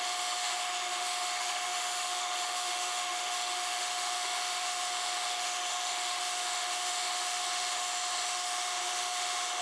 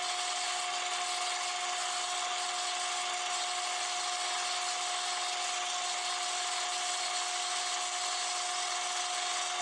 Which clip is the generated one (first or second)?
first